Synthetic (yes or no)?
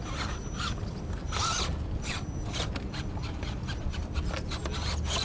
no